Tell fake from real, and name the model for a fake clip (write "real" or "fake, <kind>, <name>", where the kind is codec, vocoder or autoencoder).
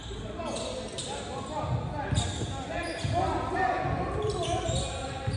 real